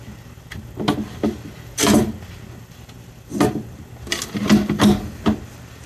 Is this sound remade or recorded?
recorded